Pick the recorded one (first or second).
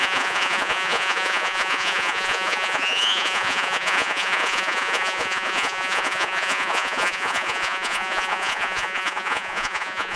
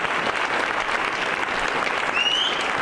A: second